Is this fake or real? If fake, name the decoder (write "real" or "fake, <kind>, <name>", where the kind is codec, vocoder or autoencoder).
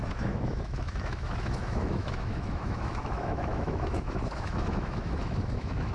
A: fake, autoencoder, DAC-VAE